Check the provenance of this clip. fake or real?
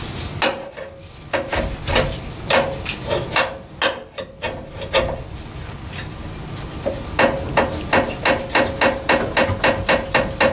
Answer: real